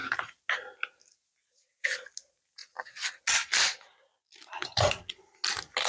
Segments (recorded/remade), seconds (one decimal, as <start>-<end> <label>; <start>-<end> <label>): 0.0-4.4 recorded; 4.4-5.0 remade; 5.0-5.9 recorded